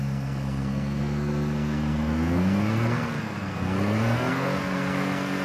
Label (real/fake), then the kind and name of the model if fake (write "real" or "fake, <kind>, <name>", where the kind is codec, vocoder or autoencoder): fake, codec, SNAC